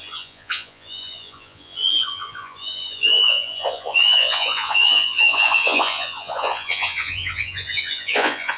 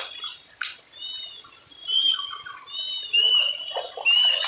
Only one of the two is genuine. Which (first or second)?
second